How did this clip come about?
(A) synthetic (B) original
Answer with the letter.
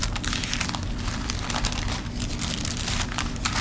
B